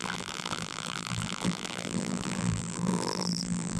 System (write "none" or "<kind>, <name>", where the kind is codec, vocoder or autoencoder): vocoder, BigVGAN v2